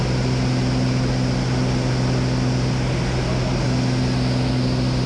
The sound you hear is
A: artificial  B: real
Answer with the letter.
B